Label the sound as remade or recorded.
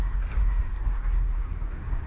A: remade